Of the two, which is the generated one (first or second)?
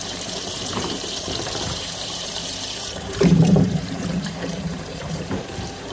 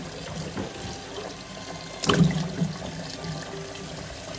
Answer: first